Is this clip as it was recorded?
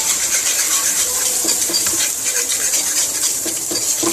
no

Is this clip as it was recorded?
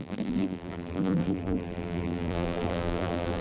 no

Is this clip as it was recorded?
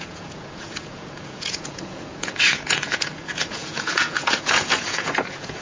no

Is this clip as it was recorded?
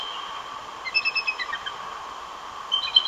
yes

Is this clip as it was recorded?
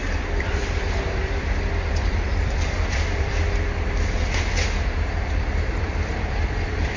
no